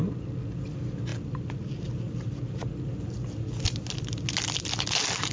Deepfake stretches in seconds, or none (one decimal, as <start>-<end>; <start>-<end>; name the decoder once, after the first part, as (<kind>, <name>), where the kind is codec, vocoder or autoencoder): none